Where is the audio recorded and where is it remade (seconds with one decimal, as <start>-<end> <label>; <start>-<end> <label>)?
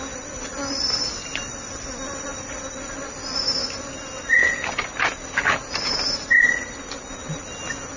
0.0-8.0 recorded